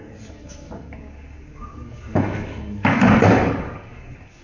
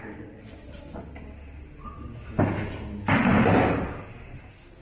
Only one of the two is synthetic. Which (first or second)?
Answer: first